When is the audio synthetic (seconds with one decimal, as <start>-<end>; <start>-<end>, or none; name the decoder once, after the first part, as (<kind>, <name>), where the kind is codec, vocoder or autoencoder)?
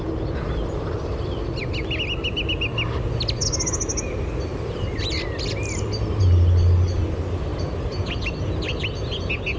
none